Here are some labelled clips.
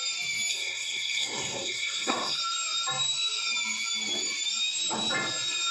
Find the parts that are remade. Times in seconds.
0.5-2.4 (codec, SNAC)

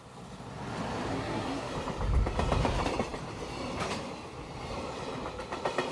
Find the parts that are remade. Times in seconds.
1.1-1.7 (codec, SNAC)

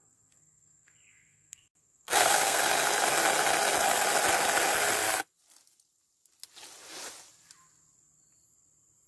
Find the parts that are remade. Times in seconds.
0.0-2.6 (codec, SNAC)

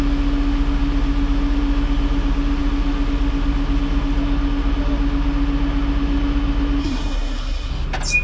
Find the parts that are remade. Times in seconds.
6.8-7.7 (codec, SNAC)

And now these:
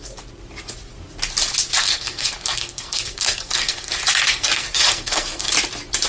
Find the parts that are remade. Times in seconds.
1.8-3.9 (codec, SNAC); 4.3-5.5